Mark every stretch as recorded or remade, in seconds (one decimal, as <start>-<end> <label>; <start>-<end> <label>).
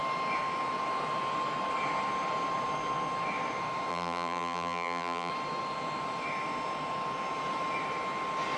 0.0-3.9 recorded; 3.9-5.3 remade; 5.3-8.6 recorded